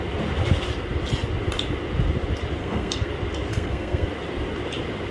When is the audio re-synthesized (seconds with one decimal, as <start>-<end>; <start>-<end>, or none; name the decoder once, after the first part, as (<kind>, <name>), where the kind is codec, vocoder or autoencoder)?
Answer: 2.6-3.1 (codec, SNAC); 3.5-4.1